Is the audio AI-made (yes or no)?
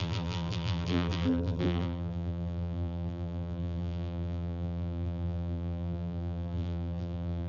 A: yes